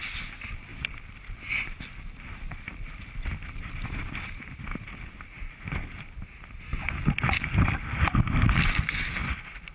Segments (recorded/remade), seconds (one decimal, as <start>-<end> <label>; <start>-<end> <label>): 0.0-0.7 recorded; 0.7-4.8 remade; 4.8-6.7 recorded; 6.7-8.1 remade; 8.1-9.7 recorded